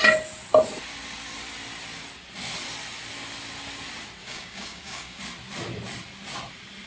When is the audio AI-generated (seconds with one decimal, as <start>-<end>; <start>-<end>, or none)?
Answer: 4.2-5.2